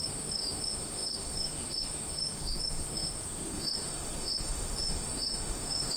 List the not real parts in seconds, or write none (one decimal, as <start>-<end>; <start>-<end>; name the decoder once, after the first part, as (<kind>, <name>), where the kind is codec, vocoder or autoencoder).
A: 0.0-6.0 (autoencoder, DAC-VAE)